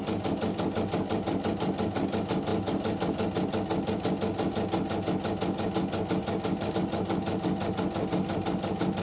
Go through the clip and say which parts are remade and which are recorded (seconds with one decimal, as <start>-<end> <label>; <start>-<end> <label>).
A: 0.0-9.0 recorded